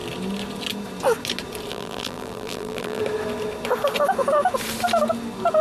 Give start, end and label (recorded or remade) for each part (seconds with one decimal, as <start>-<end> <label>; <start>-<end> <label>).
0.0-1.7 recorded; 1.7-3.0 remade; 3.0-5.6 recorded